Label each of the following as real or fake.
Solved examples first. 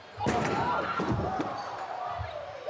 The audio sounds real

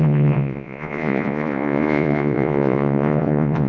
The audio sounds fake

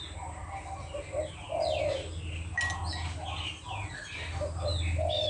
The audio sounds real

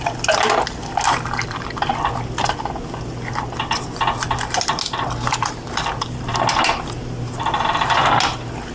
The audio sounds real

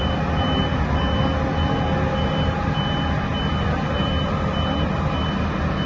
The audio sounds real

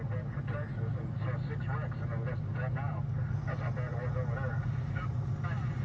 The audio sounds real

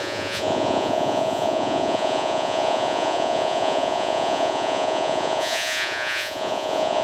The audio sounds fake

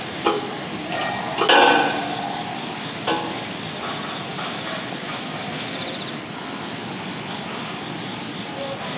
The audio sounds real